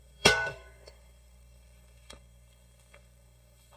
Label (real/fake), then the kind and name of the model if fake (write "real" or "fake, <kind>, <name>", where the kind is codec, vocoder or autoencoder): fake, codec, SNAC